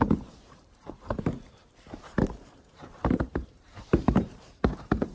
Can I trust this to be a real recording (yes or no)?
no